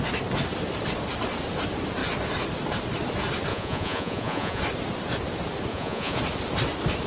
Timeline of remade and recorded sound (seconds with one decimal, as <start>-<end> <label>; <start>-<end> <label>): 0.0-3.5 recorded; 3.5-4.6 remade; 4.6-5.7 recorded; 5.7-6.2 remade; 6.2-7.1 recorded